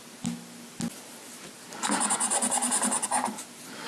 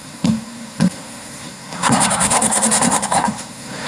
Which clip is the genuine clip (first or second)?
first